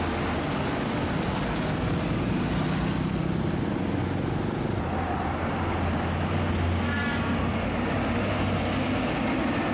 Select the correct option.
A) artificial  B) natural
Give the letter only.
B